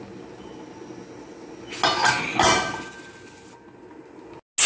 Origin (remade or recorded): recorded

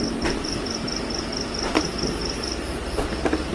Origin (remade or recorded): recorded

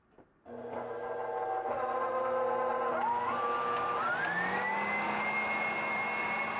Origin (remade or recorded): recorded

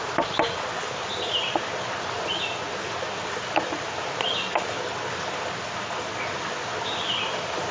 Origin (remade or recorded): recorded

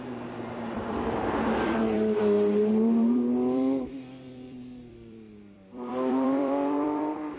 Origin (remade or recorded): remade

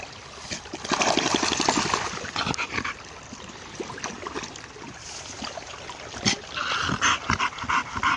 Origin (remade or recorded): recorded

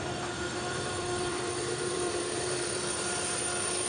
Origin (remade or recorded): remade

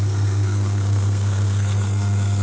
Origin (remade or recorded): remade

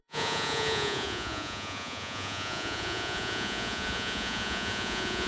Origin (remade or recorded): remade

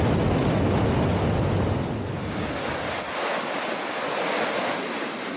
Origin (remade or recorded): recorded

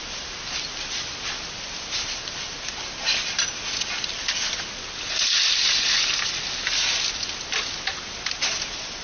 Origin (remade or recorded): recorded